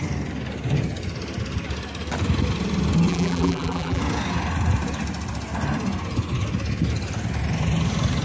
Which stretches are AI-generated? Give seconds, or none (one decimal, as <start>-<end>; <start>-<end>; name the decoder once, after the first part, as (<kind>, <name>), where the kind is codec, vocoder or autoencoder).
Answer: 3.1-4.0 (vocoder, BigVGAN v2)